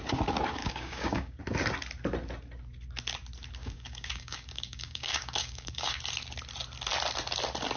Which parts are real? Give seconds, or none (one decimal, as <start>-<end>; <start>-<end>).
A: 0.0-0.6; 1.4-3.6; 6.0-7.8